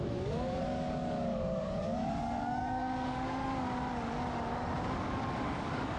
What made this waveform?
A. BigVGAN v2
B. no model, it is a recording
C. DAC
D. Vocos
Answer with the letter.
C